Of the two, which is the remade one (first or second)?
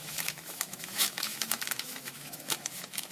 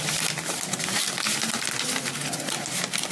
first